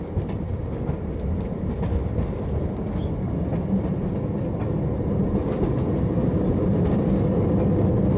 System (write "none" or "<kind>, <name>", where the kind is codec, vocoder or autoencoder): none